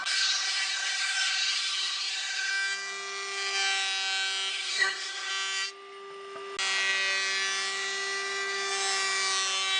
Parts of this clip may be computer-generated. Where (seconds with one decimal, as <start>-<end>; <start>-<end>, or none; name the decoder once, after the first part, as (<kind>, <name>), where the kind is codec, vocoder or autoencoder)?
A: 0.0-2.5 (codec, SNAC); 4.5-5.3

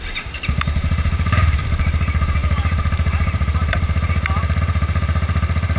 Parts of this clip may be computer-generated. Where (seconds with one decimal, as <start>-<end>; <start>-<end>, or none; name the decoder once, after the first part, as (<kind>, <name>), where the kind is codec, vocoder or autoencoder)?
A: 0.0-5.8 (vocoder, BigVGAN v2)

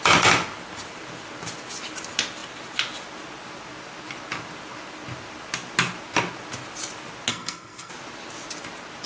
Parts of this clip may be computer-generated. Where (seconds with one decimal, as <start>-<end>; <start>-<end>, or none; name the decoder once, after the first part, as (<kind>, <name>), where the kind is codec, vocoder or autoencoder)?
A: 7.3-7.9 (codec, SNAC)

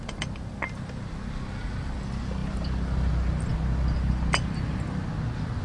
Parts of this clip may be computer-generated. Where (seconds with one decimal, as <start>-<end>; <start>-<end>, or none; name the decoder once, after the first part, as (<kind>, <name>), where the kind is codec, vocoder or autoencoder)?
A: none

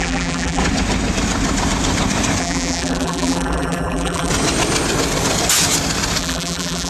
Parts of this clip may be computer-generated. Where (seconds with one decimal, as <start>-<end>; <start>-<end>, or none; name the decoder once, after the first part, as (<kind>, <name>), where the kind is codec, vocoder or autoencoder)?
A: 0.0-0.6 (vocoder, BigVGAN v2); 2.4-4.3; 6.2-6.9